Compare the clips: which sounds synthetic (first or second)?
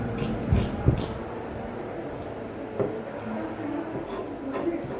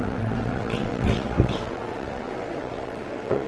second